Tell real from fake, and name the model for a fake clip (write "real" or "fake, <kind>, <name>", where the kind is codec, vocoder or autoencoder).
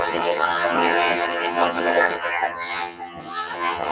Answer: fake, vocoder, HiFi-GAN